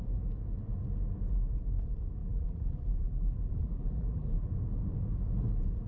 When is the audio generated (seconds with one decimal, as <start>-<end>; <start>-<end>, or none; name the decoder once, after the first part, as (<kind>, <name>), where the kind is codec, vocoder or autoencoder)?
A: 2.2-4.5 (vocoder, BigVGAN v2)